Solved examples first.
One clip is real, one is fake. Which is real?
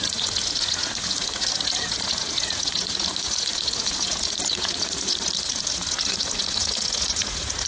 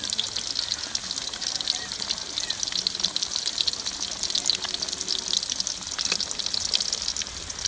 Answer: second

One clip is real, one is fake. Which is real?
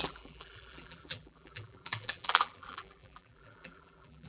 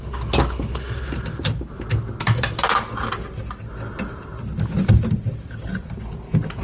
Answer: second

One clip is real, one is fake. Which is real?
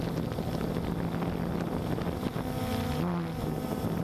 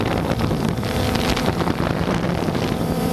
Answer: first